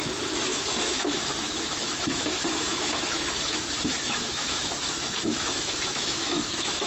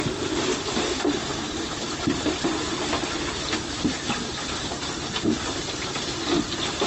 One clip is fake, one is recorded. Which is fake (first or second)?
first